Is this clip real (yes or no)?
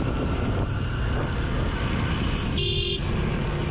yes